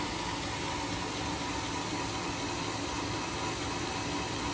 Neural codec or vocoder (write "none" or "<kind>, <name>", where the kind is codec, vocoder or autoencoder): none